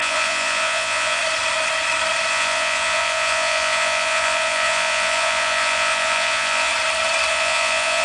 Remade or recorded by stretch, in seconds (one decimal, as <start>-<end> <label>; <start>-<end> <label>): 0.0-1.2 remade; 1.2-2.3 recorded; 2.3-6.7 remade; 6.7-7.3 recorded; 7.3-8.0 remade